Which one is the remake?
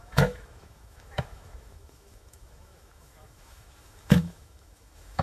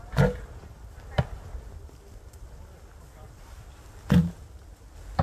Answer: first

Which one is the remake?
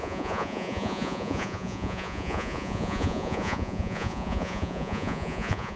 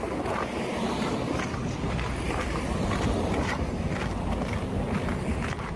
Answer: first